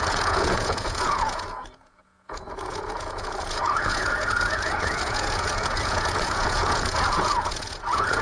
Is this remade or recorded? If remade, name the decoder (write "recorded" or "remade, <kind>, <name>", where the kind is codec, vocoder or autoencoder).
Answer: remade, vocoder, Vocos